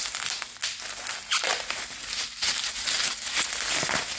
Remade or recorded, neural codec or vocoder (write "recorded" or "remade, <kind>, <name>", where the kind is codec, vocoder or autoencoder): recorded